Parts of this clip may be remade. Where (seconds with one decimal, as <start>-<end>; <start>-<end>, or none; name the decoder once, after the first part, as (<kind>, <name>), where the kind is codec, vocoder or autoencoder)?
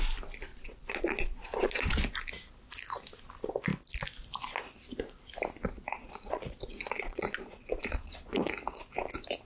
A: 0.5-2.0 (vocoder, Vocos); 5.6-8.5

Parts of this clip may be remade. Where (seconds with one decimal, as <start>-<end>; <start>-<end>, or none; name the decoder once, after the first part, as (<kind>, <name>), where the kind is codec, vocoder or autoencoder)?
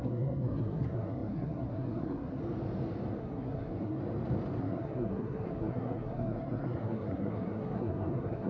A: 0.0-2.4 (codec, SNAC); 3.2-4.0; 4.6-8.5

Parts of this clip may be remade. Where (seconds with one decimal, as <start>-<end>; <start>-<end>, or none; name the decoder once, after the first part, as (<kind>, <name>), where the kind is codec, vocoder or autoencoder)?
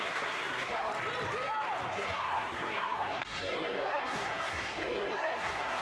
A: 0.0-0.9 (codec, SNAC); 1.9-5.8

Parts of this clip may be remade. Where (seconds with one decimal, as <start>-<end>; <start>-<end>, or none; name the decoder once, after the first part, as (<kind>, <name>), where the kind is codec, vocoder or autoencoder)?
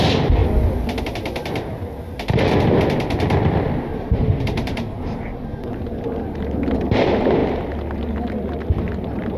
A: 3.9-5.7 (vocoder, BigVGAN v2)